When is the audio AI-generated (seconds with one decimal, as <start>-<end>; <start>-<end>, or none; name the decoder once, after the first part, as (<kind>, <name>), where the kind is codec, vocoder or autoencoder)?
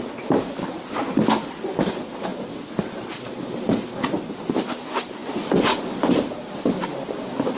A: none